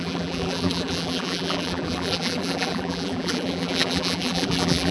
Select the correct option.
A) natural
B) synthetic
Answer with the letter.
B